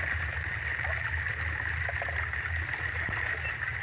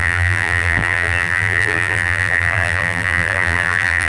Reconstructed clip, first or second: second